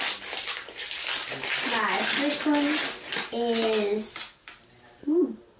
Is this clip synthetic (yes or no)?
no